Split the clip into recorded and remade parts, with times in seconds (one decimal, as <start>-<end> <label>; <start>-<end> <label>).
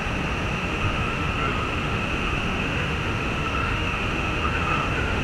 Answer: 0.0-0.7 recorded; 0.7-1.3 remade; 1.3-1.8 recorded; 1.8-5.2 remade